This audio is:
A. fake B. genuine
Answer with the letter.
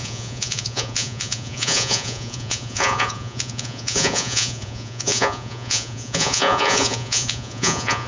A